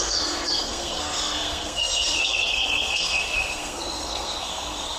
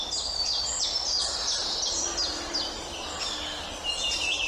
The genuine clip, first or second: second